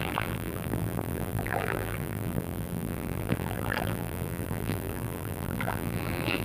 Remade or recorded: remade